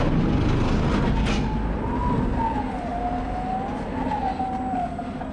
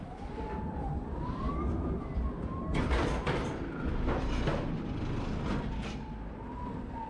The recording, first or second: first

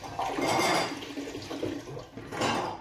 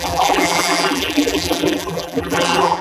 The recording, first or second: first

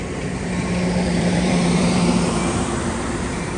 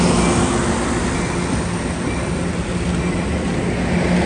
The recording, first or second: second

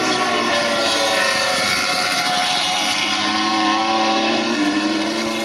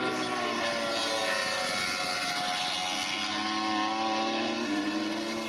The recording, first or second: second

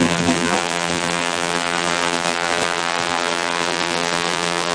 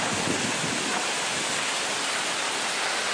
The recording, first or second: second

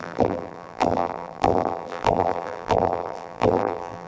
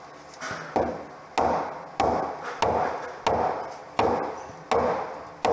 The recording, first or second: second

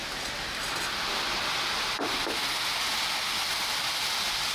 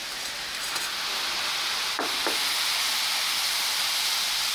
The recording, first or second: first